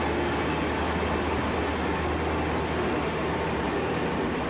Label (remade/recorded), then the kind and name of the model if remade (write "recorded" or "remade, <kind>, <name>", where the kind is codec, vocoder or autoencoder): recorded